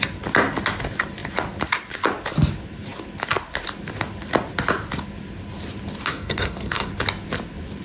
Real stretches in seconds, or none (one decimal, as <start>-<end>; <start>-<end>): 0.0-6.1; 6.9-7.8